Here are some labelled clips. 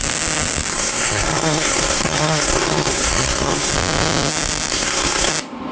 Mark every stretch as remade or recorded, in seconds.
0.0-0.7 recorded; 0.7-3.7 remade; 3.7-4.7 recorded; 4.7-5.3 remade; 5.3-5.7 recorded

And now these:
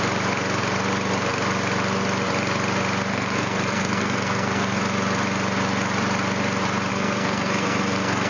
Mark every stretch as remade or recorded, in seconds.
0.0-3.1 recorded; 3.1-4.8 remade; 4.8-6.9 recorded; 6.9-8.3 remade

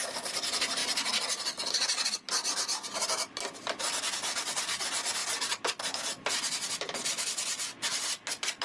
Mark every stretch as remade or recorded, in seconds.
0.0-8.6 recorded

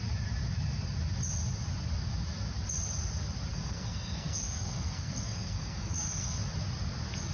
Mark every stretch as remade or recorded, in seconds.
0.0-3.5 recorded; 3.5-6.4 remade; 6.4-7.3 recorded

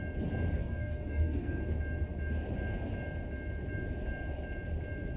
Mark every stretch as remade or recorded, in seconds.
0.0-0.6 recorded; 0.6-1.6 remade; 1.6-5.2 recorded

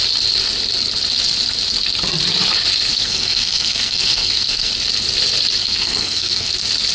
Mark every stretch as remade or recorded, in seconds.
0.0-2.9 recorded; 2.9-4.7 remade; 4.7-5.6 recorded; 5.6-6.5 remade; 6.5-6.9 recorded